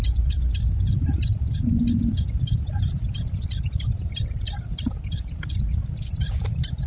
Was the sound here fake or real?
real